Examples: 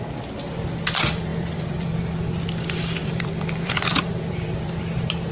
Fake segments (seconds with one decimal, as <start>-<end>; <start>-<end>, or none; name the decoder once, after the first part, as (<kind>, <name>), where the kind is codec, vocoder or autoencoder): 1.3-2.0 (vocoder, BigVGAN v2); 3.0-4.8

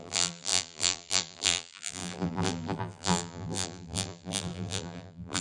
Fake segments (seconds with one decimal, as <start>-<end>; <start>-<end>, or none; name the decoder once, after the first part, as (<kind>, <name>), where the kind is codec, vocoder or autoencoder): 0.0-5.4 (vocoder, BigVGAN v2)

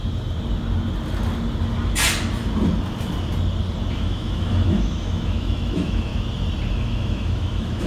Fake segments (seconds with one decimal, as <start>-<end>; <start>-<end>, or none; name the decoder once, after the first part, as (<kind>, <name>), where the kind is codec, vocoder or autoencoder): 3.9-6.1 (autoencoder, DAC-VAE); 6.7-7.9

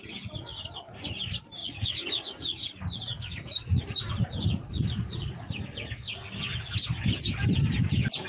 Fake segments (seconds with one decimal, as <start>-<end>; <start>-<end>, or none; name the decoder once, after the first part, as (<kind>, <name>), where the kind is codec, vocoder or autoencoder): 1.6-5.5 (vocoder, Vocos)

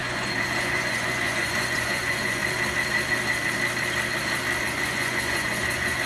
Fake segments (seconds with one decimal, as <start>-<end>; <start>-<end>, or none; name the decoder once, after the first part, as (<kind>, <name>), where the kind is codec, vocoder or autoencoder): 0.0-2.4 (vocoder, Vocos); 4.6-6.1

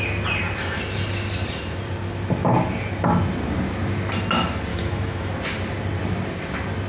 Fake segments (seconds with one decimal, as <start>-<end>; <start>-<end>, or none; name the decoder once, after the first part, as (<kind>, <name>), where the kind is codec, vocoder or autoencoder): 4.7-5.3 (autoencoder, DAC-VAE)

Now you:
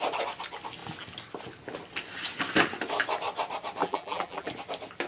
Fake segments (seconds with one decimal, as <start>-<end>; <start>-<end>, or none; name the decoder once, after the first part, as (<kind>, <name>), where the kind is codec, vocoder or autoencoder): 3.8-4.5 (vocoder, BigVGAN v2)

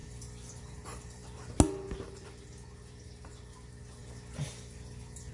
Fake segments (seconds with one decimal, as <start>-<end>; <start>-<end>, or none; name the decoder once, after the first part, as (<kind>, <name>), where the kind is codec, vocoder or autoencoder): none